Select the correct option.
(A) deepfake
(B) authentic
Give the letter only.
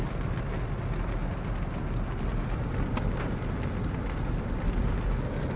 B